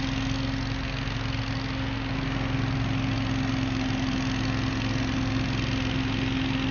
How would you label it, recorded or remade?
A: recorded